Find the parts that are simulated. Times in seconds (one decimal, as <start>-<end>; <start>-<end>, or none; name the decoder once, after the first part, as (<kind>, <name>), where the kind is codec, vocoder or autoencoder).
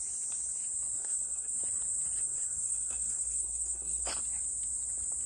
1.0-1.5 (codec, SNAC); 2.2-4.1